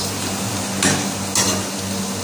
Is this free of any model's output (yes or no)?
yes